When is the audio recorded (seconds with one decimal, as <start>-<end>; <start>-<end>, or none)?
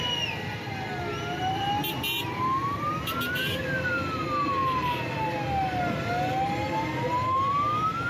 0.0-8.1